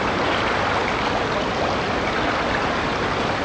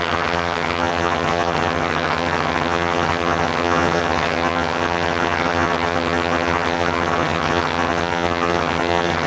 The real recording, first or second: first